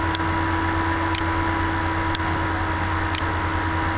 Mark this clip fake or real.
real